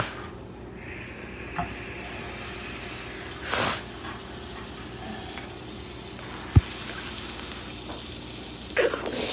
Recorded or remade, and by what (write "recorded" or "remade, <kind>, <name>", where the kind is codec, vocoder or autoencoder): recorded